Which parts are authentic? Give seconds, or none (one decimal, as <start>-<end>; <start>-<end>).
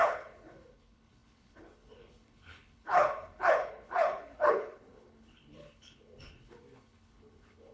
none